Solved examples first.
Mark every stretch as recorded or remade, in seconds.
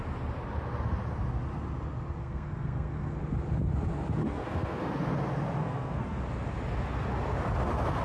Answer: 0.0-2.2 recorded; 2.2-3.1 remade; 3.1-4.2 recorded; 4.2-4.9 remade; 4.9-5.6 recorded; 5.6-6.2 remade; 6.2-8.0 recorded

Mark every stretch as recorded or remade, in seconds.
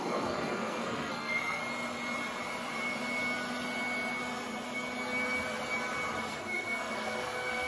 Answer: 0.0-1.6 remade; 1.6-6.2 recorded; 6.2-7.7 remade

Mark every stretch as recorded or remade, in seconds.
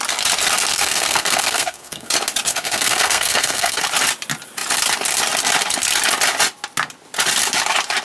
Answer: 0.0-0.7 recorded; 0.7-2.1 remade; 2.1-2.5 recorded; 2.5-3.8 remade; 3.8-8.0 recorded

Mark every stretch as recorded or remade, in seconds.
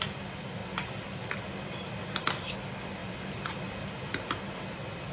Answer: 0.0-5.1 recorded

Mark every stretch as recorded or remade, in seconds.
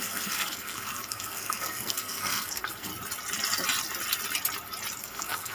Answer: 0.0-2.9 remade; 2.9-5.0 recorded; 5.0-5.5 remade